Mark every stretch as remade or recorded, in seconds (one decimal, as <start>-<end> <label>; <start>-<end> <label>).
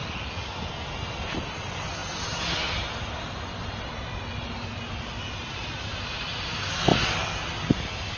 0.0-1.3 recorded; 1.3-6.9 remade; 6.9-7.6 recorded; 7.6-8.2 remade